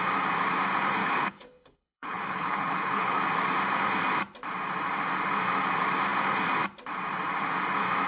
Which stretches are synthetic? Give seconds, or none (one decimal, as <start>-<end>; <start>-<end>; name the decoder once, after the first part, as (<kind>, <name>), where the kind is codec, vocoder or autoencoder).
1.0-3.2 (codec, HILCodec)